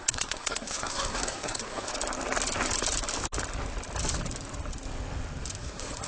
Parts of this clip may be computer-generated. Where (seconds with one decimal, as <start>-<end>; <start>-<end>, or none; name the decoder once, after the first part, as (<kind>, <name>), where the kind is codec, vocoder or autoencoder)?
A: 0.0-1.9 (codec, SNAC); 5.6-6.1